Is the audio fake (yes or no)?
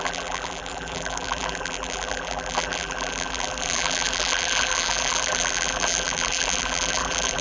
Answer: yes